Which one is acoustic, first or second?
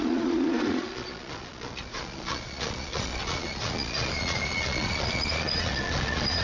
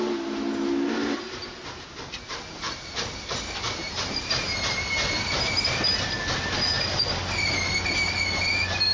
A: second